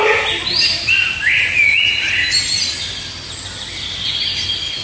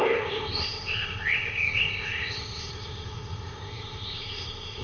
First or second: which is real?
first